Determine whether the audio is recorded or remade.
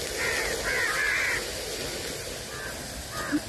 recorded